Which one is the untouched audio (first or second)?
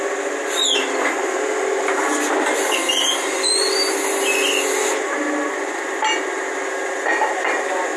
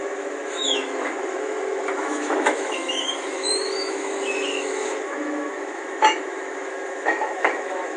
first